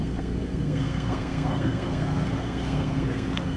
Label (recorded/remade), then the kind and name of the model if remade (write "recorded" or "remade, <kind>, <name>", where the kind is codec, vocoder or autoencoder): remade, codec, SNAC